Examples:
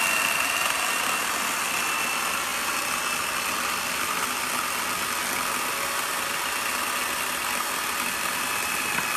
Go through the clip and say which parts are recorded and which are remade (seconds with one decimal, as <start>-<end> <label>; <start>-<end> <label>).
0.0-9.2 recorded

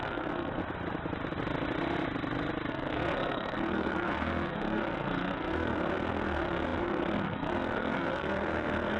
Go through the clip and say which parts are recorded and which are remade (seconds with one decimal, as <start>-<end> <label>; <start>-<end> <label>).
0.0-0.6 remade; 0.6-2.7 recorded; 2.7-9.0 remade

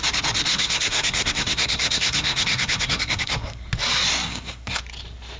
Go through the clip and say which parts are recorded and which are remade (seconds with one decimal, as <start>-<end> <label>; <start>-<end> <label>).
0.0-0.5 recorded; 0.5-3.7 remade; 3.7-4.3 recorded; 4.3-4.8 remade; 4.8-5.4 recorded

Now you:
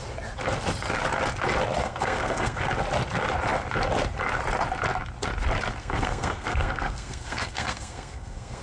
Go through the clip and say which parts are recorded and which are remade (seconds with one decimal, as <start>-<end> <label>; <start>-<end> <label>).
0.0-1.8 recorded; 1.8-2.6 remade; 2.6-5.8 recorded; 5.8-8.6 remade

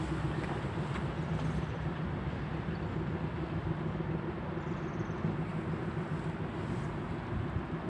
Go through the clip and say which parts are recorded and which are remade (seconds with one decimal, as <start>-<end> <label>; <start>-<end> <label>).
0.0-7.9 recorded

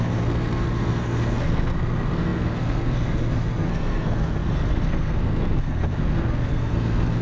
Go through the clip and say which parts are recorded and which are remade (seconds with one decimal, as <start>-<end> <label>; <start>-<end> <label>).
0.0-7.2 remade